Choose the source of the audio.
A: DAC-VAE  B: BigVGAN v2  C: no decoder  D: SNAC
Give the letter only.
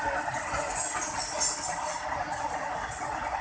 C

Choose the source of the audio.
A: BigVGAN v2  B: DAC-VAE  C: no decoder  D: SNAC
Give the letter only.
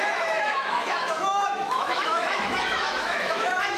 B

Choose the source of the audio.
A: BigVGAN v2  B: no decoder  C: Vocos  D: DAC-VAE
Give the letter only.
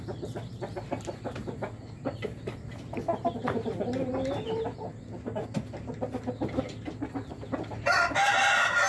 B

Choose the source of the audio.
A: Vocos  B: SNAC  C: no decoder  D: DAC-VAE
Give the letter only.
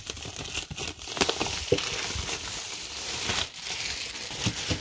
C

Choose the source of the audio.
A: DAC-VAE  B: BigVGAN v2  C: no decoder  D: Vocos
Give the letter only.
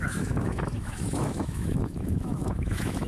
A